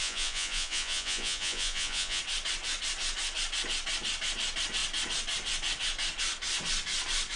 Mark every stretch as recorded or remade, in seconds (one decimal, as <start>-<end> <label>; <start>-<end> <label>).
0.0-2.2 remade; 2.2-7.4 recorded